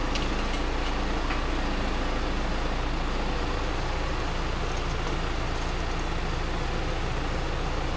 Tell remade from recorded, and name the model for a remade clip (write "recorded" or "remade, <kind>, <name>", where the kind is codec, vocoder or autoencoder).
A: recorded